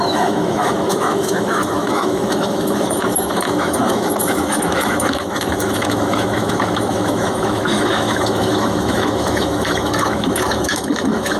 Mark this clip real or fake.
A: fake